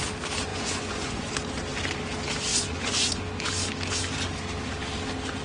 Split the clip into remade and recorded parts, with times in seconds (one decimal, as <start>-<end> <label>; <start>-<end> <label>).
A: 0.0-0.5 recorded; 0.5-1.3 remade; 1.3-2.5 recorded; 2.5-3.2 remade; 3.2-5.4 recorded